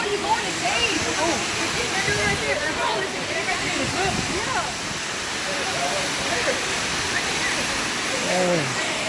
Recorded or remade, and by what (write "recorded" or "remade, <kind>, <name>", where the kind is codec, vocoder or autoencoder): recorded